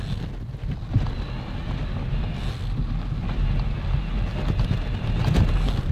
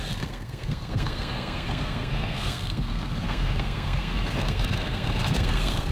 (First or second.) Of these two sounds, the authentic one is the first